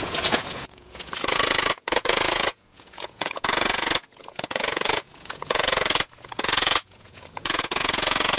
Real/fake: fake